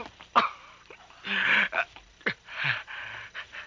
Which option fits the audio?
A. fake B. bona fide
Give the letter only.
B